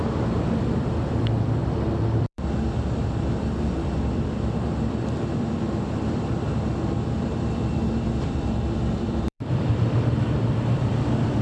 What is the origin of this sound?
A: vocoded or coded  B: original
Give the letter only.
A